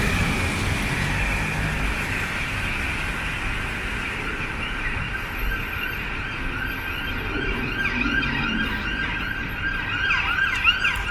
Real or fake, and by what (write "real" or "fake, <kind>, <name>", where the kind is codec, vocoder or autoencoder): real